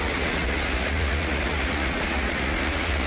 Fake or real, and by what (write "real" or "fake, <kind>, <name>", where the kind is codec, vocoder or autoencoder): fake, vocoder, Vocos